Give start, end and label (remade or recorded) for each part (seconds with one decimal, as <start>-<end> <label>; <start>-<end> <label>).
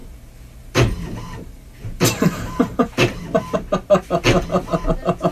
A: 0.0-3.2 remade; 3.2-5.3 recorded